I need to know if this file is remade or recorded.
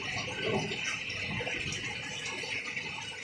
recorded